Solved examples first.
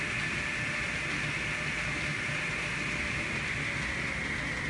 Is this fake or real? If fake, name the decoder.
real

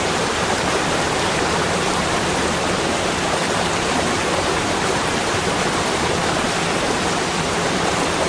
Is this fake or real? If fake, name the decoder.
fake, vocoder, BigVGAN v2